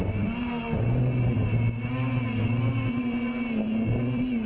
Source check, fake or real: real